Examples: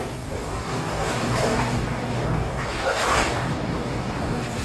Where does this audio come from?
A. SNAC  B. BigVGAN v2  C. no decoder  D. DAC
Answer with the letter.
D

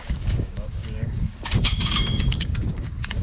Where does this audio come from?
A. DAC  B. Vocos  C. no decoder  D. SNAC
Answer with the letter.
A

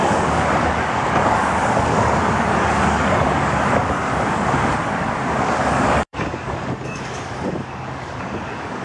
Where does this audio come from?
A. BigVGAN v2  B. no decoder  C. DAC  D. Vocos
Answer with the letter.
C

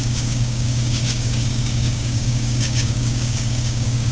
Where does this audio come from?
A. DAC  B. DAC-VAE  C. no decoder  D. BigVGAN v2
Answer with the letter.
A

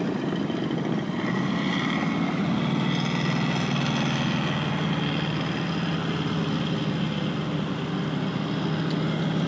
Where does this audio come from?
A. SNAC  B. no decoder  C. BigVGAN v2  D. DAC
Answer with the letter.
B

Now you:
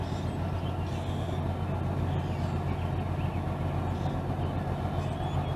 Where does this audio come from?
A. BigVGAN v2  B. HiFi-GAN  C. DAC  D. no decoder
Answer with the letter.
D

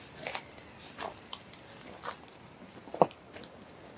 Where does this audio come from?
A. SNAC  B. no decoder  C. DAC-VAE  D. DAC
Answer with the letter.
B